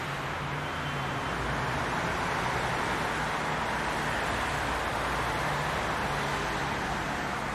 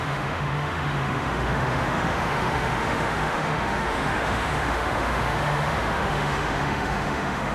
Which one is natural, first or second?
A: first